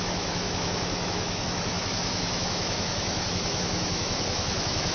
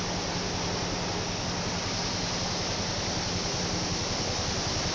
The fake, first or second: first